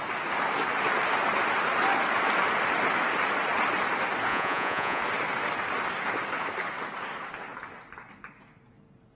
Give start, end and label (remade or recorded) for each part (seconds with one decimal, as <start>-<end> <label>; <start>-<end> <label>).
0.0-4.3 recorded; 4.3-5.0 remade; 5.0-9.2 recorded